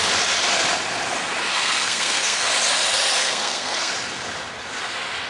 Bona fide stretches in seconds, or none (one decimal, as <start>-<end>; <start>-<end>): 0.0-1.5; 2.5-3.2; 3.9-5.3